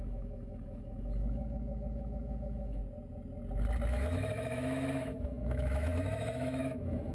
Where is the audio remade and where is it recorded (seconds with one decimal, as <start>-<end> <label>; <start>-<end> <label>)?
0.0-2.8 remade; 2.8-3.9 recorded; 3.9-7.1 remade

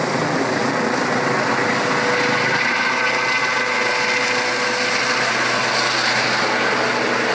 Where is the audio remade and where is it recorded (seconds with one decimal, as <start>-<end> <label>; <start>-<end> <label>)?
0.0-7.3 recorded